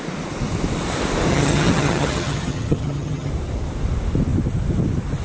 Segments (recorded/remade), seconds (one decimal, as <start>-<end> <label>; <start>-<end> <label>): 0.0-1.3 recorded; 1.3-3.3 remade; 3.3-5.2 recorded